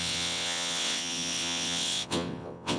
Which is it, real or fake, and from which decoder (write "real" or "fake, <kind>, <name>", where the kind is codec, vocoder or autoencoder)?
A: fake, vocoder, WaveNeXt